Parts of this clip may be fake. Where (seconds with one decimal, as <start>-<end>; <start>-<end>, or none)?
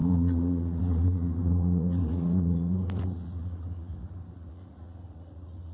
0.0-5.7